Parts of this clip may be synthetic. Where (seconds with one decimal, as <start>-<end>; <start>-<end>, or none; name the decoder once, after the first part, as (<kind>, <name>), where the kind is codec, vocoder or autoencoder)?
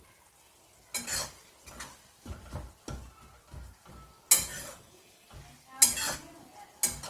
4.5-5.3 (vocoder, BigVGAN v2)